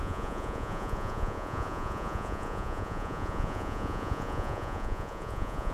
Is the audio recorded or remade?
remade